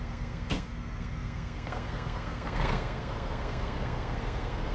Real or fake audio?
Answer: fake